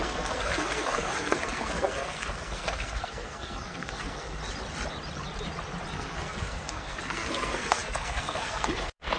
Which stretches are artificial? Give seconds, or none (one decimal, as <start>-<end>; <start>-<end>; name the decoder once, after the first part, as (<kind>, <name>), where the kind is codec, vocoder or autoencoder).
0.0-4.4 (codec, SNAC); 5.9-9.2